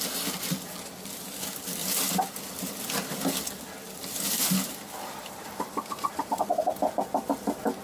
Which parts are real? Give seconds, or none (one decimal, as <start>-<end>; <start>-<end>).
0.0-5.2; 6.3-7.8